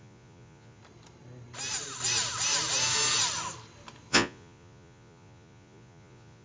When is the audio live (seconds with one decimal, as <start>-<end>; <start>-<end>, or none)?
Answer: 0.8-4.1